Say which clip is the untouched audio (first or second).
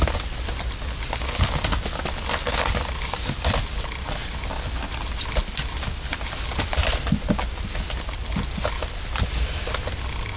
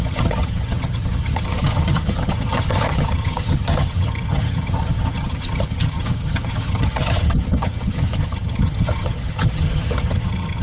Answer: first